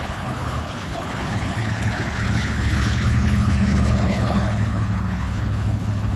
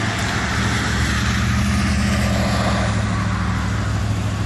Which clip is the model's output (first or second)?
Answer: first